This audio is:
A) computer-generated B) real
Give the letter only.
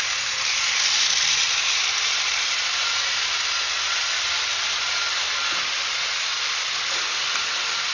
B